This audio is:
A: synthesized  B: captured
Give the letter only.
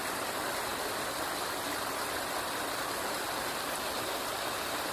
B